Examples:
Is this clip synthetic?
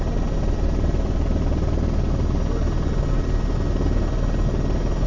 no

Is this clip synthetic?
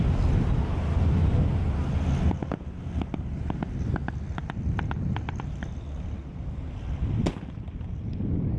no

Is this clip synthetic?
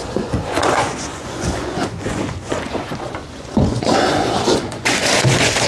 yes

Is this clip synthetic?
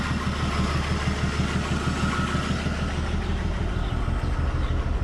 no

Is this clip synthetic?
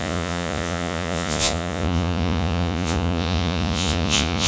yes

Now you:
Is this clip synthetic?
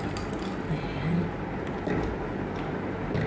no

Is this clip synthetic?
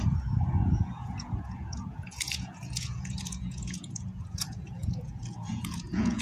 yes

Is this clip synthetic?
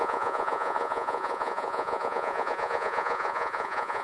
yes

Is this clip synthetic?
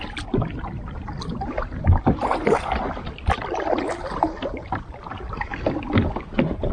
no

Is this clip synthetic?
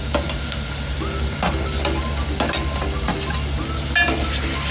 no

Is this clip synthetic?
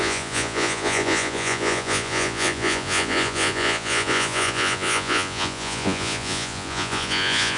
yes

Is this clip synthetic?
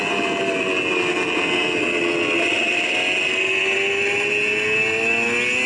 no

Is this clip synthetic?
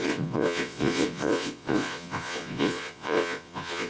yes